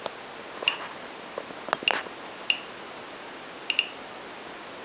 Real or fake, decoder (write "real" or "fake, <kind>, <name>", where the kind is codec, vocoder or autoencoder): real